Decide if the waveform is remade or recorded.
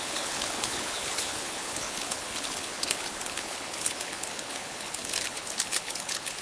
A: remade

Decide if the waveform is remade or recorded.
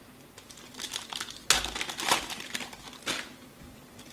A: recorded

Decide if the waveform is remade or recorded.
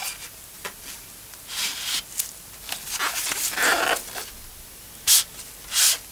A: recorded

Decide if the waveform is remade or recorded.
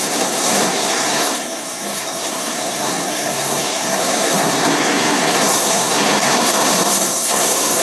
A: remade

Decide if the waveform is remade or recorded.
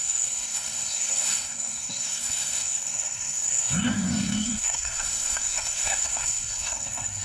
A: remade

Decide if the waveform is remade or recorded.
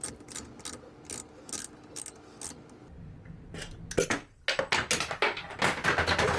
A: recorded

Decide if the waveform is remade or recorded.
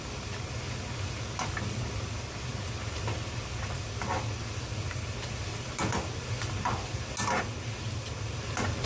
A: recorded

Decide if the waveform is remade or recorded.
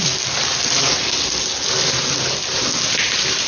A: recorded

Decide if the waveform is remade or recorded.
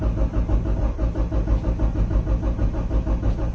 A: recorded